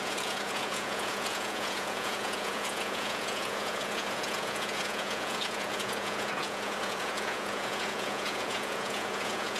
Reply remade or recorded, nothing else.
remade